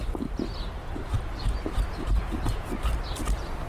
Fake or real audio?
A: real